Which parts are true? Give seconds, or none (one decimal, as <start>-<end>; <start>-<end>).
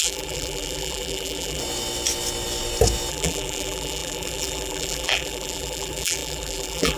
1.6-3.1